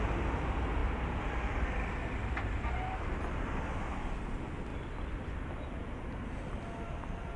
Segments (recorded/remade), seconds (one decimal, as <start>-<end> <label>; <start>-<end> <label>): 0.0-0.8 recorded; 0.8-1.6 remade; 1.6-7.4 recorded